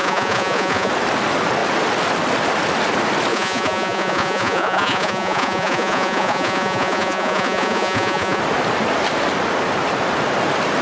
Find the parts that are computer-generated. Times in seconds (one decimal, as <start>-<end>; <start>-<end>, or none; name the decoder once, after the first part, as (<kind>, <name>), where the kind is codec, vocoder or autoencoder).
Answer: 0.0-0.9 (vocoder, Vocos); 3.3-8.4